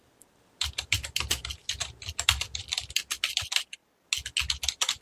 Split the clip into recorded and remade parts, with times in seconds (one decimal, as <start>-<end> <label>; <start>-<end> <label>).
0.0-1.4 remade; 1.4-2.1 recorded; 2.1-3.8 remade; 3.8-4.5 recorded; 4.5-5.0 remade